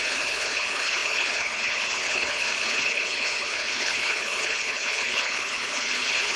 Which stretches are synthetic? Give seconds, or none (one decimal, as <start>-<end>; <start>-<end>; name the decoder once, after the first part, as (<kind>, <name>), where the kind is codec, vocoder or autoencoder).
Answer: 0.0-6.4 (codec, HILCodec)